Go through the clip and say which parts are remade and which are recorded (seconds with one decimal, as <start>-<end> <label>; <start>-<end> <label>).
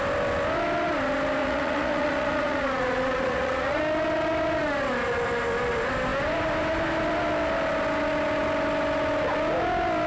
0.0-1.4 recorded; 1.4-3.8 remade; 3.8-10.1 recorded